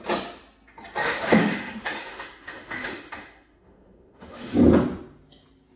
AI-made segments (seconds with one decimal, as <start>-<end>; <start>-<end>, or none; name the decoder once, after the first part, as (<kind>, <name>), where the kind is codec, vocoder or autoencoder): 1.0-4.5 (autoencoder, DAC-VAE)